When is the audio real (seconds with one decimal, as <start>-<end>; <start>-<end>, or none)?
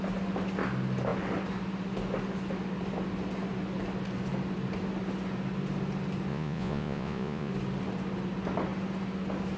0.0-6.3; 7.5-9.6